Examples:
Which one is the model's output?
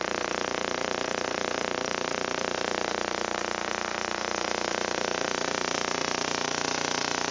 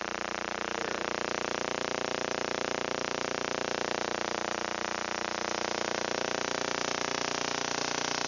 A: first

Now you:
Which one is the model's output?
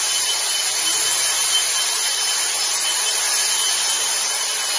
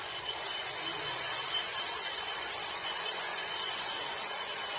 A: second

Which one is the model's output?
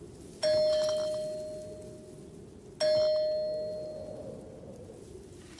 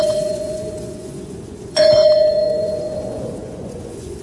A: second